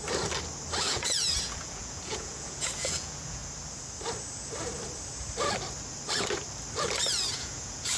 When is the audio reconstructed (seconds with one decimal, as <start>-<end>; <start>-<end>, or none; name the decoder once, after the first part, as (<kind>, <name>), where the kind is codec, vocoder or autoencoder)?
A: 0.8-3.4 (vocoder, Vocos); 7.3-8.0